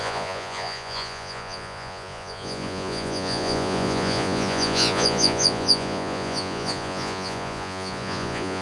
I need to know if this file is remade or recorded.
remade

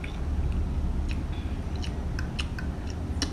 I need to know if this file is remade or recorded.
recorded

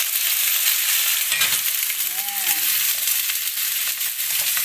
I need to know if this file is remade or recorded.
recorded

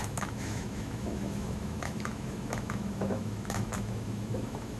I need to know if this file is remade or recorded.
remade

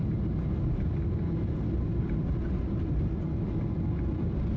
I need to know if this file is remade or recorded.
recorded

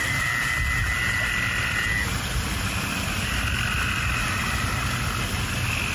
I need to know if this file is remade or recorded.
recorded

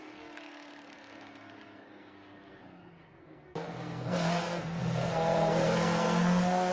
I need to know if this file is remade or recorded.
remade